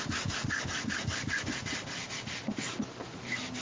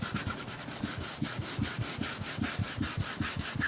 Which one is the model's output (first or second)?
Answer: second